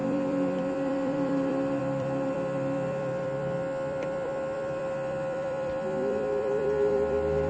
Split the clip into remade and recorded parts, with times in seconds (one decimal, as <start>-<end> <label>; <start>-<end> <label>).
0.0-7.5 remade